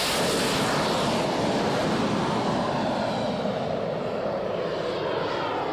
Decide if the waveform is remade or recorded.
recorded